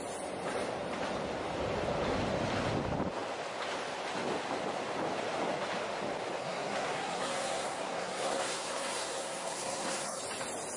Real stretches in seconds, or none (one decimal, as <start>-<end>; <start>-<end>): 0.0-6.4; 10.2-10.8